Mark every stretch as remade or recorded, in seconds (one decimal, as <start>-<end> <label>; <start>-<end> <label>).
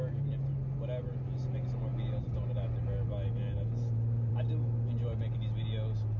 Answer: 0.0-6.2 recorded